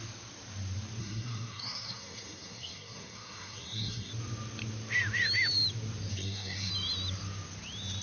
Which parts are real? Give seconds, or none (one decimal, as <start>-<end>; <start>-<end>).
0.0-1.0; 4.1-6.1; 6.7-8.0